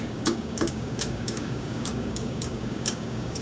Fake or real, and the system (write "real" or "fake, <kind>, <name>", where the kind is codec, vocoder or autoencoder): fake, codec, DAC